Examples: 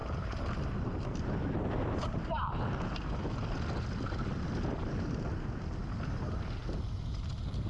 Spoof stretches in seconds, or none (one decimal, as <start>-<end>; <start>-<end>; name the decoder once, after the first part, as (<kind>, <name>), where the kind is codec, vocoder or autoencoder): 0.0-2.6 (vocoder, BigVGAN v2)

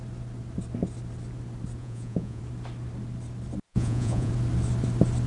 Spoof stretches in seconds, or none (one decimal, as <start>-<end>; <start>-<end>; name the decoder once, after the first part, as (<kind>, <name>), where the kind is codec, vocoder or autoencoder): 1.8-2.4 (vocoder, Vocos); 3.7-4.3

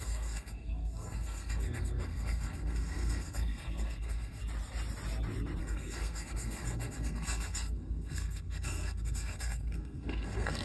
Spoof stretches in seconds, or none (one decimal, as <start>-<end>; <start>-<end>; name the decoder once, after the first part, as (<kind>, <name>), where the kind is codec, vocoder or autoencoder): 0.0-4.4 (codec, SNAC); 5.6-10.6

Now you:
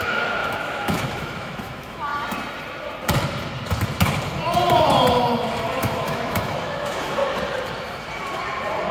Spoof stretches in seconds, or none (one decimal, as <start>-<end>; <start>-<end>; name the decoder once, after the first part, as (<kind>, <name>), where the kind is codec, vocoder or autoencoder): 0.0-2.1 (autoencoder, DAC-VAE); 5.8-7.2

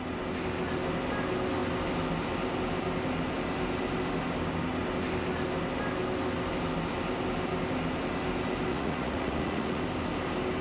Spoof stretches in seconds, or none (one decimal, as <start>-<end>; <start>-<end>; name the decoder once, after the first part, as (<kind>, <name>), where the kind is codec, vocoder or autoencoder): 8.7-9.8 (vocoder, Vocos)

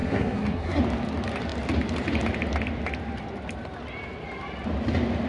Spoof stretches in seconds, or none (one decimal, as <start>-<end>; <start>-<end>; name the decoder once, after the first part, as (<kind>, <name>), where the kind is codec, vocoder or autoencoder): 0.0-0.8 (codec, SNAC)